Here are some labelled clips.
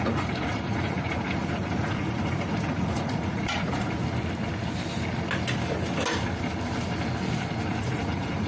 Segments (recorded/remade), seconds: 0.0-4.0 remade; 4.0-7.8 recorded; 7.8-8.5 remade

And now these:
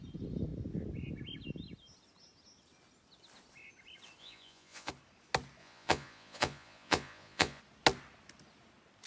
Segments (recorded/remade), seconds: 0.0-4.2 recorded; 4.2-4.9 remade; 4.9-5.6 recorded; 5.6-7.6 remade; 7.6-9.1 recorded

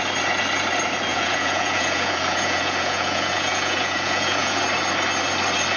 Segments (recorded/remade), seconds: 0.0-1.1 recorded; 1.1-4.6 remade; 4.6-5.8 recorded

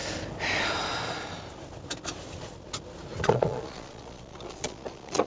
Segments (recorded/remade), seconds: 0.0-3.2 recorded; 3.2-5.3 remade

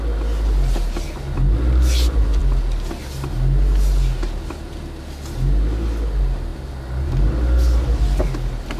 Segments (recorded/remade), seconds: 0.0-8.8 recorded

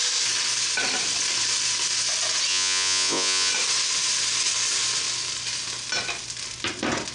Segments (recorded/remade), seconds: 0.0-2.5 recorded; 2.5-3.5 remade; 3.5-7.1 recorded

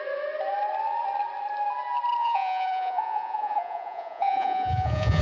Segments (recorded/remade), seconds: 0.0-2.2 recorded; 2.2-5.2 remade

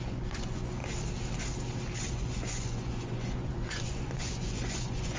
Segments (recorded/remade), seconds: 0.0-0.8 remade; 0.8-2.1 recorded; 2.1-5.2 remade